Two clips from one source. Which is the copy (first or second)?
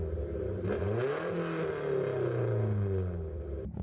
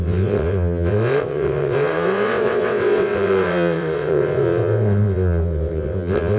second